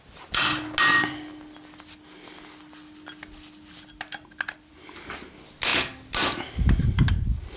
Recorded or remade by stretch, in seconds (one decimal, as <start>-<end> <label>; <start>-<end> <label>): 0.0-7.6 recorded